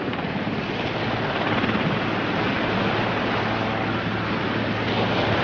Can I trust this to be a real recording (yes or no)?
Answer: yes